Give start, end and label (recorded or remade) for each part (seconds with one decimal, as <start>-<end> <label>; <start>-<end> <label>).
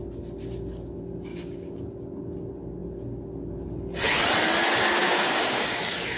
0.0-1.3 recorded; 1.3-1.9 remade; 1.9-5.0 recorded; 5.0-6.2 remade